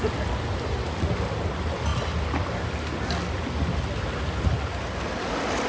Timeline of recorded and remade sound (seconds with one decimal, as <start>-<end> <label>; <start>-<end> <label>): 0.0-5.7 recorded